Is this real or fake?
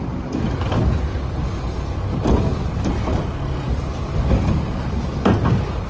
real